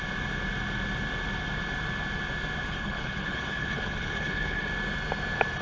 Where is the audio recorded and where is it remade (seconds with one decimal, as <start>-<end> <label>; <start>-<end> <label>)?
0.0-2.6 recorded; 2.6-4.7 remade; 4.7-5.6 recorded